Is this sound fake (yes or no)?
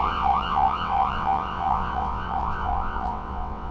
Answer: yes